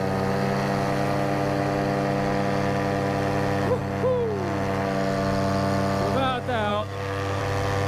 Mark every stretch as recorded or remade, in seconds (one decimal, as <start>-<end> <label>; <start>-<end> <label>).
0.0-6.7 recorded; 6.7-7.4 remade; 7.4-7.9 recorded